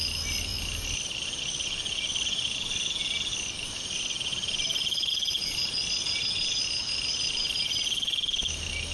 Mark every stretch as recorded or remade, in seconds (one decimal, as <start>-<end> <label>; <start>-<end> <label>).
0.0-8.9 recorded